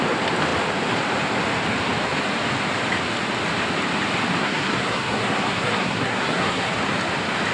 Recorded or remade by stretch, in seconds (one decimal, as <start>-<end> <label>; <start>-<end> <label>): 0.0-4.4 recorded; 4.4-6.7 remade; 6.7-7.5 recorded